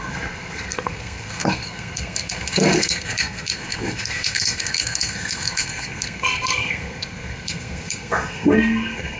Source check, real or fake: fake